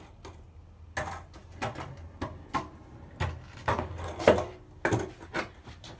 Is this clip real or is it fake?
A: real